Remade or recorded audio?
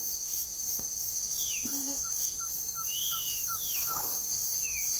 remade